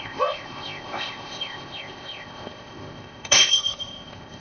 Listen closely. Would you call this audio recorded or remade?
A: remade